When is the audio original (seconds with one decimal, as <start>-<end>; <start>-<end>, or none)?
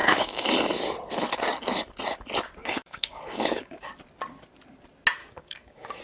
0.5-2.6; 3.9-5.2